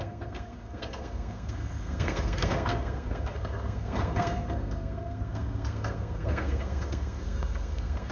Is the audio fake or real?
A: fake